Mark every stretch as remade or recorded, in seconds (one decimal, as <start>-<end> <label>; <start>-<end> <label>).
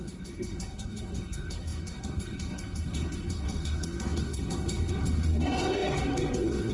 0.0-6.7 remade